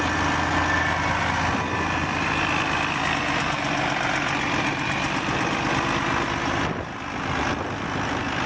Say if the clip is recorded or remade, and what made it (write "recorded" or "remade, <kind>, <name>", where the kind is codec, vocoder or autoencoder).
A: recorded